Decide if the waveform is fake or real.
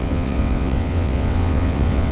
fake